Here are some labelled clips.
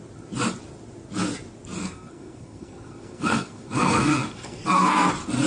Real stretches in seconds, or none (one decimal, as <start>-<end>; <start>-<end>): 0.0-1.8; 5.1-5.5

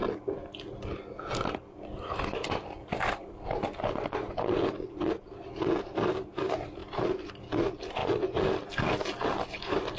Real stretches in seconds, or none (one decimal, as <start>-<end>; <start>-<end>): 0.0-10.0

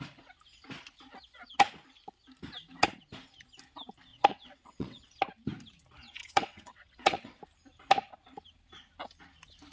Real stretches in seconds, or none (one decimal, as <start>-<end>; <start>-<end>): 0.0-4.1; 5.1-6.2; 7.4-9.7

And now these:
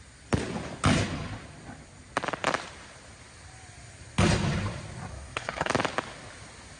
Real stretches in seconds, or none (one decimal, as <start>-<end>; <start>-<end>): 0.0-5.1; 5.7-6.8

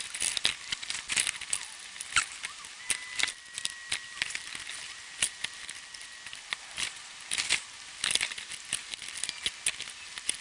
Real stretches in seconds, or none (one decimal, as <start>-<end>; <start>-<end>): 0.0-10.4

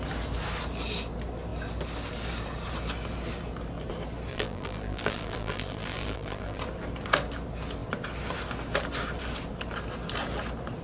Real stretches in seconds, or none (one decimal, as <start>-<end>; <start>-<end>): 0.0-4.3; 6.6-10.8

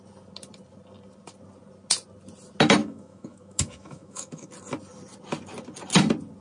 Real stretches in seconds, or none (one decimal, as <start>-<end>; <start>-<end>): 0.0-2.8; 4.5-6.4

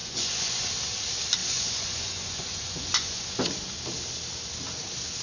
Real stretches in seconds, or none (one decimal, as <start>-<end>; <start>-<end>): 0.7-1.4; 3.4-5.2